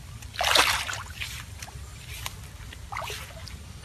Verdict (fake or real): real